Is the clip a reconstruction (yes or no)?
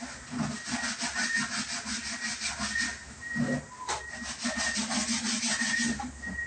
no